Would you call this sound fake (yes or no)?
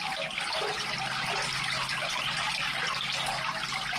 no